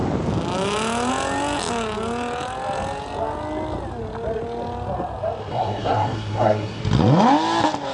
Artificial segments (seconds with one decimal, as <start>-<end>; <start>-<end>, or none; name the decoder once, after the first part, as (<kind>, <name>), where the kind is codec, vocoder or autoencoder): 5.5-6.8 (codec, SNAC)

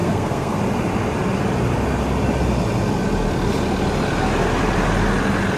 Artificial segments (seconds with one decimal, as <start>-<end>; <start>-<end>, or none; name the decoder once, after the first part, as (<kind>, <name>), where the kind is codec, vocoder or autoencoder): 0.0-0.6 (codec, SNAC)

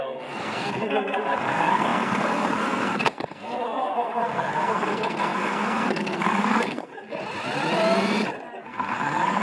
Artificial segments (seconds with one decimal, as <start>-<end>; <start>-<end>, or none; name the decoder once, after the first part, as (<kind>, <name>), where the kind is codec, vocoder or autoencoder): 0.0-6.9 (codec, SNAC); 8.6-9.4

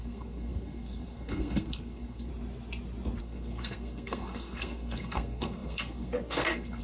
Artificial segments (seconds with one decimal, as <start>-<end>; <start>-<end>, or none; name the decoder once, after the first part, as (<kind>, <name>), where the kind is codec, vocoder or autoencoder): 0.0-2.3 (codec, SNAC); 3.2-6.8